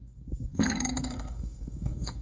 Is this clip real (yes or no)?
no